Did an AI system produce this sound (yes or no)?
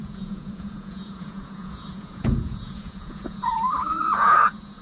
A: yes